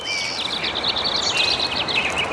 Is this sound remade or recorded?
recorded